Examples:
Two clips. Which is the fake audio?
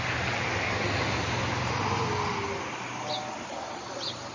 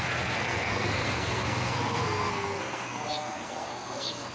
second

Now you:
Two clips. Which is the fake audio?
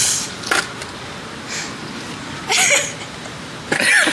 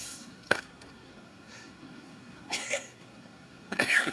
second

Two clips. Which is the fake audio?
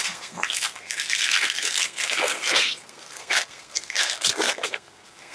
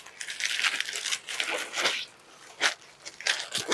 first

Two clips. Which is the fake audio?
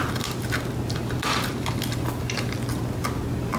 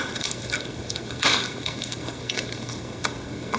second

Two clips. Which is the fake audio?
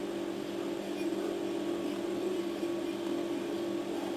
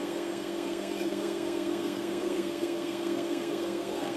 second